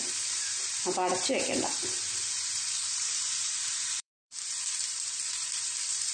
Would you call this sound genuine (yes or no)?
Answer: no